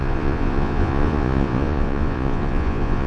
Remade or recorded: remade